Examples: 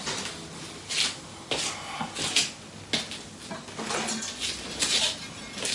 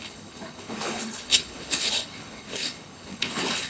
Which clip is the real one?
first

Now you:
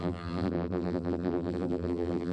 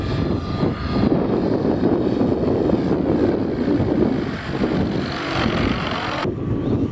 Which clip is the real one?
second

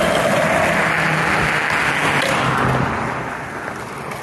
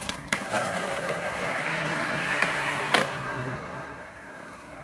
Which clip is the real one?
first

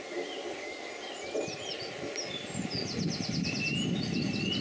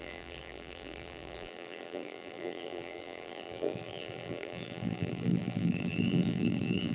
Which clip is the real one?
first